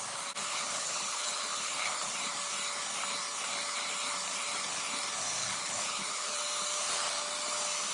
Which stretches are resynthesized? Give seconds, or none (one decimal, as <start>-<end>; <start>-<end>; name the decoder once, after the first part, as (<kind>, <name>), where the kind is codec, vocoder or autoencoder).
0.4-2.1 (codec, HILCodec); 5.4-6.4